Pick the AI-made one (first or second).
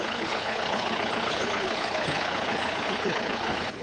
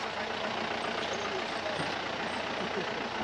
first